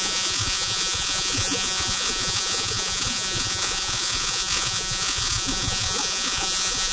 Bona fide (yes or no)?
no